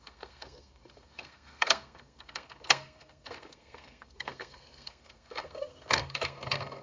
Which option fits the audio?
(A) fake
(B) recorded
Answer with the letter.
A